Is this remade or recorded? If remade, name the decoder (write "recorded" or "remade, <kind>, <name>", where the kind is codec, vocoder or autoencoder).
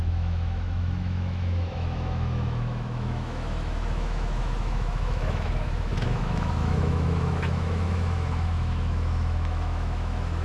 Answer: remade, autoencoder, DAC-VAE